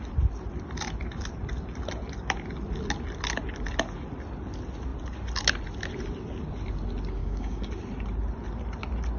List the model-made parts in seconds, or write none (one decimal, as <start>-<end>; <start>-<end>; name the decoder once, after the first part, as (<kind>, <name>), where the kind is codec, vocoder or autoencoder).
7.2-7.7 (codec, DAC)